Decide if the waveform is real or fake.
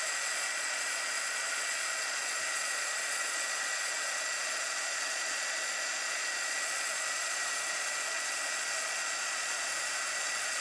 fake